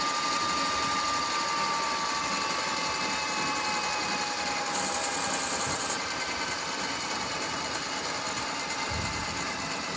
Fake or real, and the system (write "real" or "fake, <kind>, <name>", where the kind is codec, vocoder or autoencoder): real